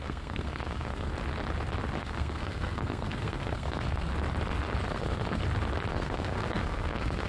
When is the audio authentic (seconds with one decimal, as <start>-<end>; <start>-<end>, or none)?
1.1-2.0; 4.1-4.9; 5.4-5.9